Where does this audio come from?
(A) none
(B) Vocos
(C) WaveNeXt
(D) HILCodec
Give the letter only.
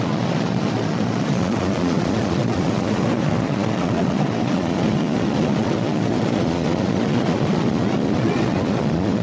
B